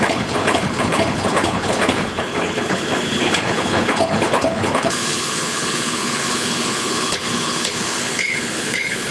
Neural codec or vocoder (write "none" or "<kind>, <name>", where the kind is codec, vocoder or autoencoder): codec, HILCodec